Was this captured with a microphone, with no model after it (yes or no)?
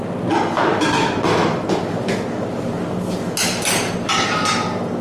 yes